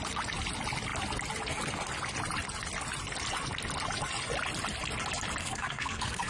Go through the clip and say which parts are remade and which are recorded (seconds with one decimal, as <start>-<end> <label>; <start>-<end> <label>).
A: 0.0-5.4 recorded; 5.4-6.3 remade